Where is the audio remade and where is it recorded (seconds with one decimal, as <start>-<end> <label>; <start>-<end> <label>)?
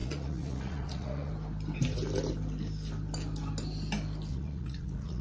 0.0-1.3 remade; 1.3-4.3 recorded; 4.3-5.2 remade